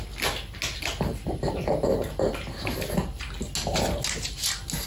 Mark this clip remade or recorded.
recorded